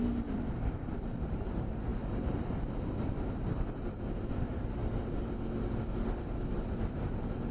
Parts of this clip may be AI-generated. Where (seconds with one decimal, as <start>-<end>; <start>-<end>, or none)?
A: 0.0-4.8; 6.5-7.5